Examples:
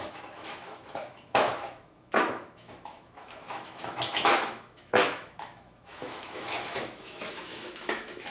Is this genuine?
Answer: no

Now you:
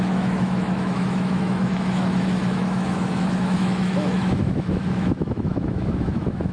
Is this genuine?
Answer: no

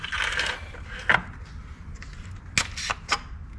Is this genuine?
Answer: yes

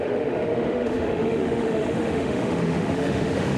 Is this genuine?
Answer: no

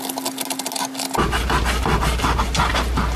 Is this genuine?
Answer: yes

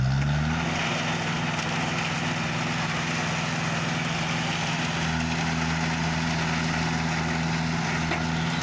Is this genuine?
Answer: yes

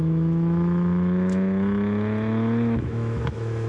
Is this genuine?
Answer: no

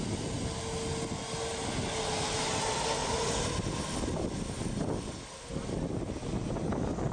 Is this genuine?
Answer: yes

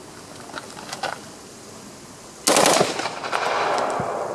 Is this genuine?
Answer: yes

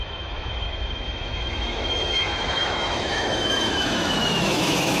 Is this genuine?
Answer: no